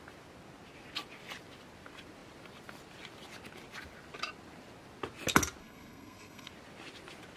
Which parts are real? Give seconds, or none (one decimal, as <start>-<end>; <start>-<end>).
0.0-5.6; 6.5-7.4